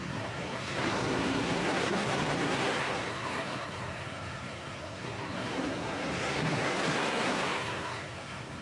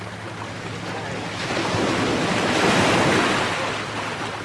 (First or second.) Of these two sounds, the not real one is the first